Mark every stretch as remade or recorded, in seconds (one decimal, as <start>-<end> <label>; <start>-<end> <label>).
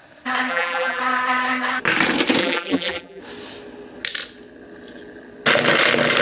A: 0.0-0.5 recorded; 0.5-1.0 remade; 1.0-2.4 recorded; 2.4-3.2 remade; 3.2-6.2 recorded